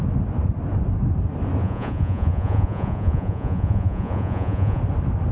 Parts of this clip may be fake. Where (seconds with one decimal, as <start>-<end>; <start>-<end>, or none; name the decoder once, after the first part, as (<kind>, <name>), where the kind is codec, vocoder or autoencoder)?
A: 1.6-4.8 (vocoder, Vocos)